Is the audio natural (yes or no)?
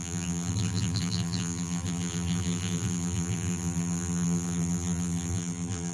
no